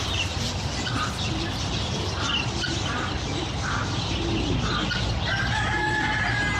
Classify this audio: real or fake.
real